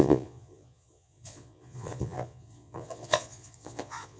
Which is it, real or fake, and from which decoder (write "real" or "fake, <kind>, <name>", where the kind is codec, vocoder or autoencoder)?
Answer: fake, vocoder, Vocos